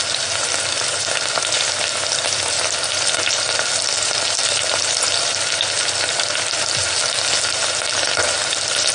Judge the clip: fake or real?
real